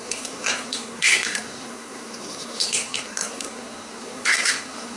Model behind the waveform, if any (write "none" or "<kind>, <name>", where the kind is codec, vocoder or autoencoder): codec, SNAC